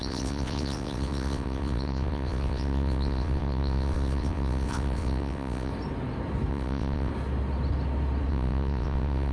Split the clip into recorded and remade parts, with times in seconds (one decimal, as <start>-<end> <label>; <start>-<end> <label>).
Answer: 0.0-5.7 remade; 5.7-6.5 recorded; 6.5-7.1 remade; 7.1-8.3 recorded; 8.3-9.3 remade